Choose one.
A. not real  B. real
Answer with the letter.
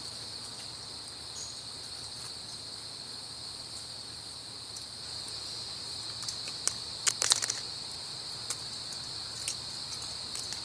B